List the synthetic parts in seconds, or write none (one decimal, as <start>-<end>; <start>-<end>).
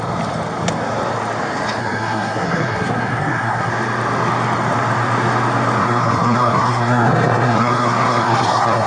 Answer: 1.8-3.7; 5.8-8.9